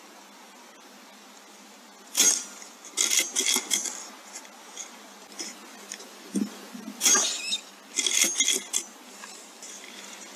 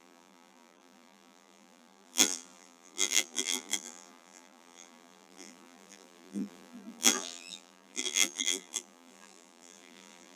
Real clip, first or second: first